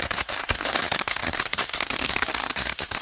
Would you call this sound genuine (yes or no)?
no